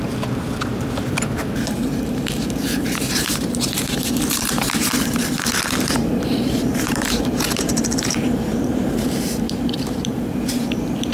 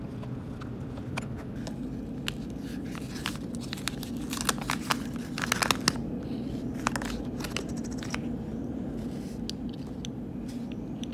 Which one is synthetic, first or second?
first